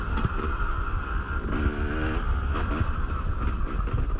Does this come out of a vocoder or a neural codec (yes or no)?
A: no